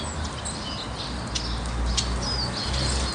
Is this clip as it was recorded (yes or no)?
yes